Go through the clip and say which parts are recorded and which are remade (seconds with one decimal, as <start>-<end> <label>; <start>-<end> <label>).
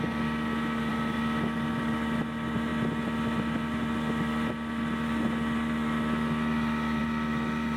0.0-7.8 recorded